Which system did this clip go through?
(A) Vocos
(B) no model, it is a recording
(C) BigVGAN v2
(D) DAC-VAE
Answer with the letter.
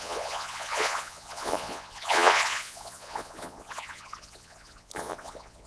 A